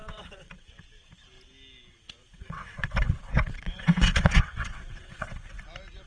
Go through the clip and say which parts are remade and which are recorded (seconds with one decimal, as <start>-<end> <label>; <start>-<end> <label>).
0.0-0.7 remade; 0.7-1.9 recorded; 1.9-5.6 remade; 5.6-6.1 recorded